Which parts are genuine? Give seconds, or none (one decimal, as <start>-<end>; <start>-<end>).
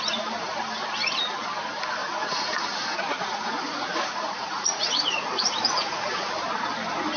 0.0-2.0; 6.3-7.2